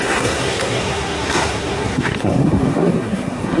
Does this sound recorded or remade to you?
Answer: remade